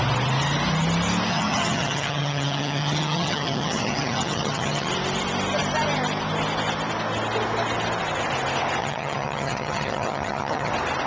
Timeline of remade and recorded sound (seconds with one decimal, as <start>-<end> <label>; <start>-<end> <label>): 0.0-1.3 recorded; 1.3-4.9 remade; 4.9-8.8 recorded; 8.8-10.7 remade; 10.7-11.1 recorded